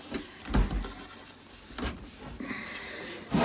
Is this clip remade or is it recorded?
recorded